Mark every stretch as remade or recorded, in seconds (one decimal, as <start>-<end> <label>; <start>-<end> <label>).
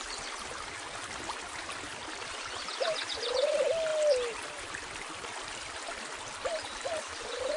0.0-7.6 recorded